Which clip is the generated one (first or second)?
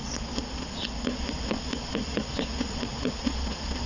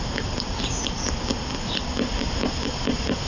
first